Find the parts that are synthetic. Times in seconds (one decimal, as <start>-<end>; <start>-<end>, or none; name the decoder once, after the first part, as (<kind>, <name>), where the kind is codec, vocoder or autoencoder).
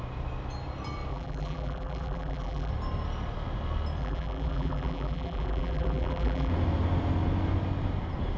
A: 1.1-2.7 (vocoder, BigVGAN v2); 4.0-6.5